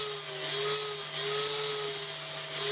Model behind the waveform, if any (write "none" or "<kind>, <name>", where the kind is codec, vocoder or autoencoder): none